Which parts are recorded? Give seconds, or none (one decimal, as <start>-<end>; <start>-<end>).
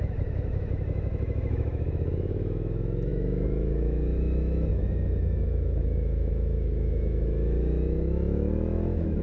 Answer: none